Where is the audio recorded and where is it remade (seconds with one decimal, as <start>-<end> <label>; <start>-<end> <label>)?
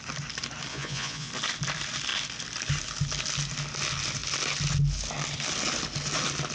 0.0-0.7 recorded; 0.7-1.3 remade; 1.3-6.5 recorded